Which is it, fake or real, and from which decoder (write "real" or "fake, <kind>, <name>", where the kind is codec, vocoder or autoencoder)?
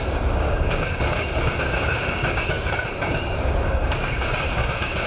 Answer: fake, codec, DAC